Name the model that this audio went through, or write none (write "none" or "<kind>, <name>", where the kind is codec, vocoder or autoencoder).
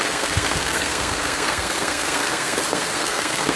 codec, SNAC